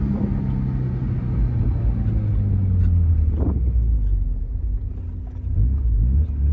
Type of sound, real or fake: real